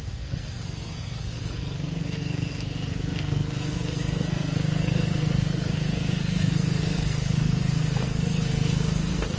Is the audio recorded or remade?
remade